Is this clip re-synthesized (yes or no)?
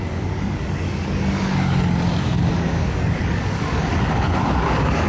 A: yes